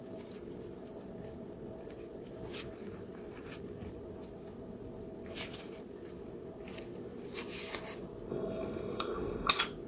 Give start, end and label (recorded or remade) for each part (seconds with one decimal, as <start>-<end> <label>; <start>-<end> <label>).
0.0-8.3 recorded; 8.3-9.5 remade; 9.5-9.9 recorded